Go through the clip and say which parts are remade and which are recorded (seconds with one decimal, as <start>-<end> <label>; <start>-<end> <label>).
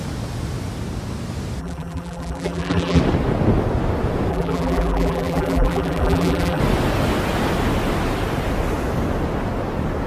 0.0-1.6 recorded; 1.6-3.0 remade; 3.0-4.3 recorded; 4.3-6.6 remade; 6.6-10.1 recorded